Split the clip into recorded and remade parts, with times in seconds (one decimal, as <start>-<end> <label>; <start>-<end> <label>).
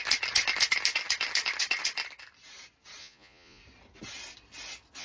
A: 0.0-3.0 recorded; 3.0-3.6 remade; 3.6-5.0 recorded